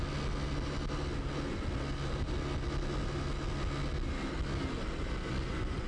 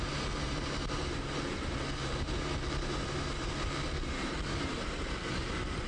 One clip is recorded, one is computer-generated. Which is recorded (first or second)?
first